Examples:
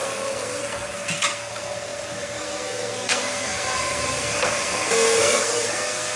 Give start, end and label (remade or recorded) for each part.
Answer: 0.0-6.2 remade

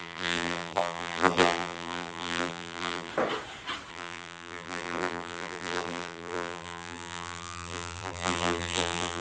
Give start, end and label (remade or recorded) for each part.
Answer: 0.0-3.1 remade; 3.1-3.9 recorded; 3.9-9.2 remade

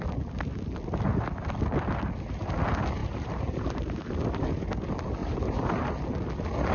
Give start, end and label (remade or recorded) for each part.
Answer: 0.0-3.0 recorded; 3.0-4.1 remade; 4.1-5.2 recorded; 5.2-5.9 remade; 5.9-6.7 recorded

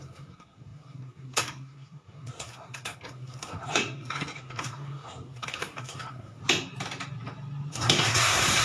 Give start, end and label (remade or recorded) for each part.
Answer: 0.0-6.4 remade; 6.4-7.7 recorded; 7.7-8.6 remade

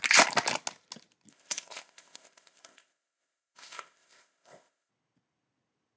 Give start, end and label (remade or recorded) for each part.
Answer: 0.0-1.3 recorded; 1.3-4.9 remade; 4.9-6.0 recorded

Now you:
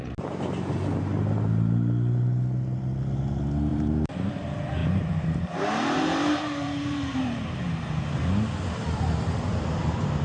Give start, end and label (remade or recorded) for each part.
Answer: 0.0-3.7 recorded; 3.7-4.3 remade; 4.3-4.8 recorded; 4.8-7.6 remade; 7.6-10.2 recorded

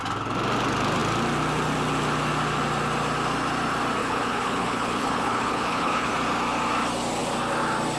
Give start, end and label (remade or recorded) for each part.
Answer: 0.0-4.0 recorded; 4.0-6.1 remade; 6.1-8.0 recorded

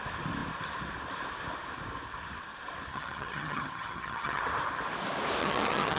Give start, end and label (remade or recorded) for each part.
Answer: 0.0-2.9 recorded; 2.9-4.4 remade; 4.4-5.4 recorded; 5.4-6.0 remade